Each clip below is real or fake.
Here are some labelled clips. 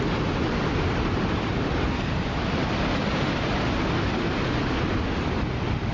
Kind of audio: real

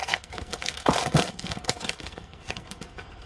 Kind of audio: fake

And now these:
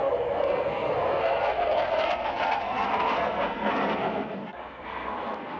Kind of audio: fake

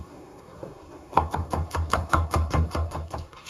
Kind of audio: fake